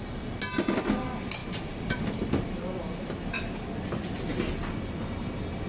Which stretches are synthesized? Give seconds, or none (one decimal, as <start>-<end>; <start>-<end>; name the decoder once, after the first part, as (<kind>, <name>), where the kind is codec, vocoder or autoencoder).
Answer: 1.4-2.5 (vocoder, BigVGAN v2)